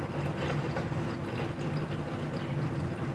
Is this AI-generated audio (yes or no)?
no